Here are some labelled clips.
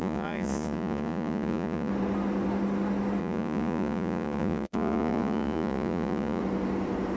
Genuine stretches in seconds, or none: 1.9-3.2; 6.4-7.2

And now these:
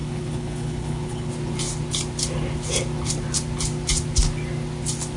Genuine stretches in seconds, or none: 1.3-5.2

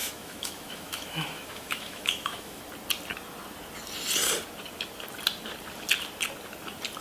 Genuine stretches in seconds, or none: 2.6-7.0